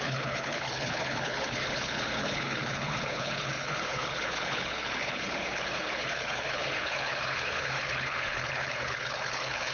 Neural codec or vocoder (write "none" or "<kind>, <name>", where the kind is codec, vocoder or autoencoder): codec, HILCodec